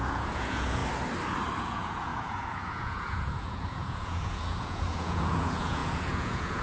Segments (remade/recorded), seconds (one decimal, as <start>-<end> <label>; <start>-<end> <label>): 0.0-0.8 remade; 0.8-1.6 recorded; 1.6-6.6 remade